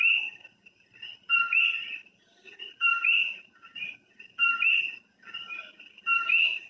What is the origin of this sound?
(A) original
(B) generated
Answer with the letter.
A